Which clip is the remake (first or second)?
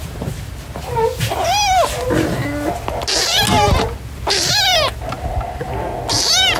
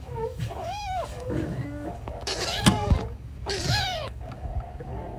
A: second